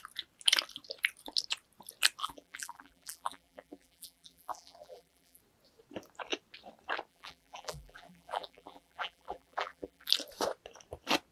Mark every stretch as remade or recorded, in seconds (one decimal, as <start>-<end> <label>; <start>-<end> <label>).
0.0-2.2 recorded; 2.2-5.4 remade; 5.4-7.1 recorded; 7.1-10.1 remade; 10.1-11.3 recorded